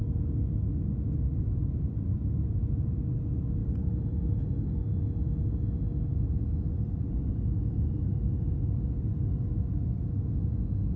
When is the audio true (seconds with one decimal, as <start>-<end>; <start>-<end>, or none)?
0.0-1.3; 1.9-3.6; 4.5-11.0